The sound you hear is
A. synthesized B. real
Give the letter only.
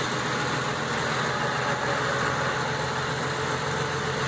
B